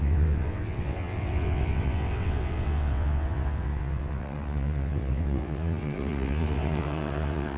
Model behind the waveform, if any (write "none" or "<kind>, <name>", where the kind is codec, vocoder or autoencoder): vocoder, WaveNeXt